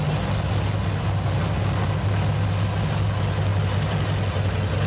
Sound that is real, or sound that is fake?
real